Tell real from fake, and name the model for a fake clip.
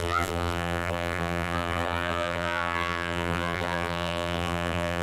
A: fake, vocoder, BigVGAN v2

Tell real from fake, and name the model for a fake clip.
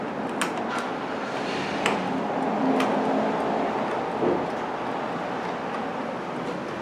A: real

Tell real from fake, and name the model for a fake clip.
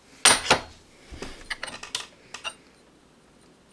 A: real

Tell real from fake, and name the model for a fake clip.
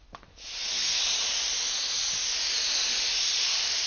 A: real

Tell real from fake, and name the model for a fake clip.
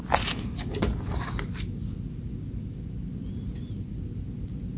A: real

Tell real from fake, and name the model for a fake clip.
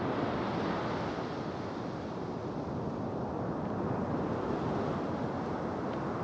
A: real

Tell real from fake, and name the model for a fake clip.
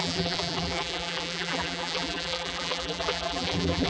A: fake, vocoder, BigVGAN v2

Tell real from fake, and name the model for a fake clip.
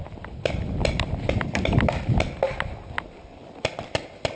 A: fake, vocoder, BigVGAN v2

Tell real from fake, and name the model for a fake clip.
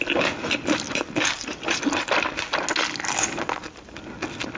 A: real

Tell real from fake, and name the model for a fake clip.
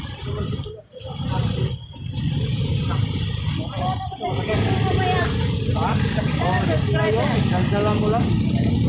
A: real